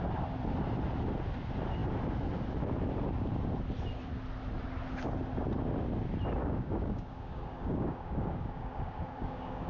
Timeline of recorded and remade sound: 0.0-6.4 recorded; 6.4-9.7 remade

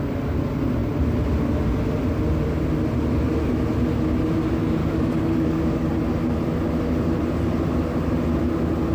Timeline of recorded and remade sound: 0.0-4.8 recorded; 4.8-5.9 remade; 5.9-8.9 recorded

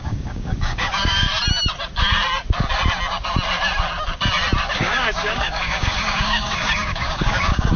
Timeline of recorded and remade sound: 0.0-1.3 remade; 1.3-4.7 recorded; 4.7-7.8 remade

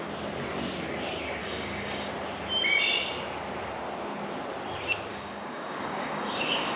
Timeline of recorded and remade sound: 0.0-1.4 recorded; 1.4-2.1 remade; 2.1-5.1 recorded; 5.1-6.8 remade

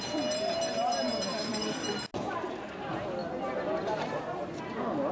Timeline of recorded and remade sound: 0.0-1.4 recorded; 1.4-1.9 remade; 1.9-5.1 recorded